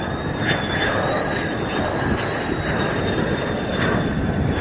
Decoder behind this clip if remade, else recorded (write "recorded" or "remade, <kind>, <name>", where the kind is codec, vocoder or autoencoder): recorded